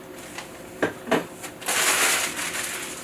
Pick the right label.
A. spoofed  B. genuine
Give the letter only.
B